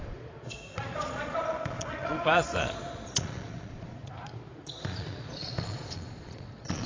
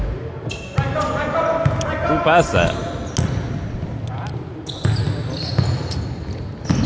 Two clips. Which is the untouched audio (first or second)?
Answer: second